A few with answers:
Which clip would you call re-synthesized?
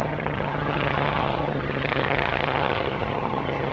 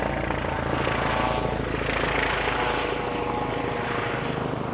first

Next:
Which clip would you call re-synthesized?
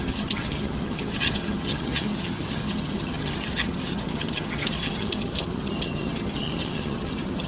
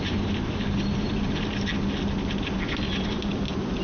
first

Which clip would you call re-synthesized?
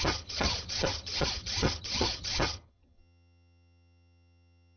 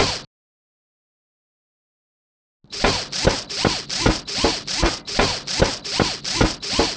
first